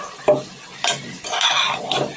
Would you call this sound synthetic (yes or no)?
no